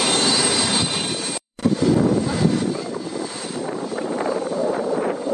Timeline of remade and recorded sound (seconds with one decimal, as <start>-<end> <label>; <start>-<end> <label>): 0.0-1.6 remade; 1.6-3.3 recorded; 3.3-5.3 remade